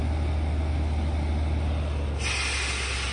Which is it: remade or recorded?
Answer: recorded